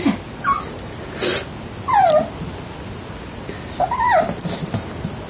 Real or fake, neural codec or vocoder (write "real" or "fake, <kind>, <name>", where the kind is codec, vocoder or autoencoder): real